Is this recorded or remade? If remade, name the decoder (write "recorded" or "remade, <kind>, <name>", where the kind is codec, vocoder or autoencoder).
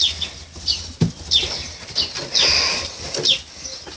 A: recorded